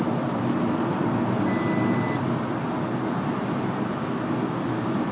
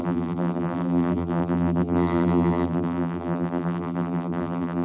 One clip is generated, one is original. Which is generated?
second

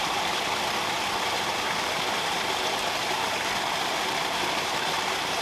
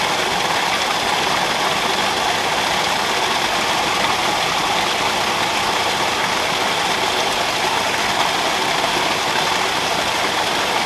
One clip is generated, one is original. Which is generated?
first